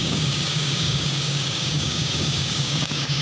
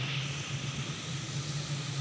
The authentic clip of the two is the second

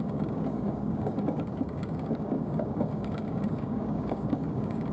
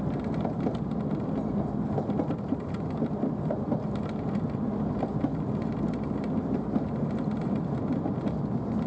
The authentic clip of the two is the second